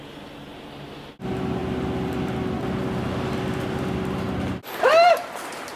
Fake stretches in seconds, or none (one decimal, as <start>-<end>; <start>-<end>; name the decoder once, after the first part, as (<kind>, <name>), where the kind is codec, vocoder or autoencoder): none